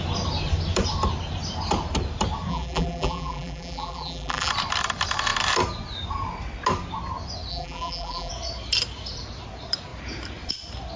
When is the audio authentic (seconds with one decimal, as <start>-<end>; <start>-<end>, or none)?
0.0-2.5; 4.5-7.5; 8.3-11.0